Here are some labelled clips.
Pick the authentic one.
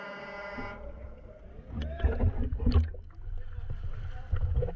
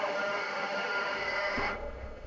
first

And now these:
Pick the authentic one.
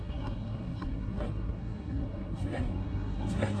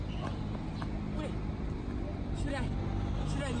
second